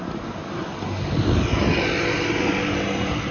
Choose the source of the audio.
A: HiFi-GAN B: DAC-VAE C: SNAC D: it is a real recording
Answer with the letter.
D